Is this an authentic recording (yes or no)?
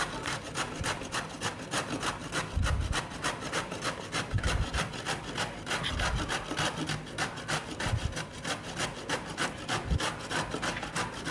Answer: yes